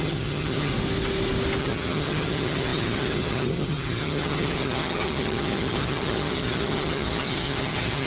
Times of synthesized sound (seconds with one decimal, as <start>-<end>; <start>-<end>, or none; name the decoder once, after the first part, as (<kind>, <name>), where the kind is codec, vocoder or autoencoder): 0.0-0.7 (vocoder, HiFi-GAN); 1.6-8.1